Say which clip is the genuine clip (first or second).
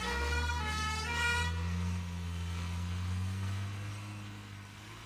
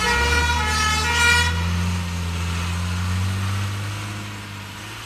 second